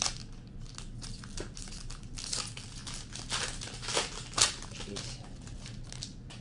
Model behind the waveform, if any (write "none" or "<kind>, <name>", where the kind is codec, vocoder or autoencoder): none